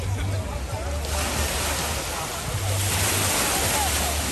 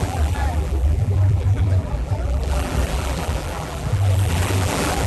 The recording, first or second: first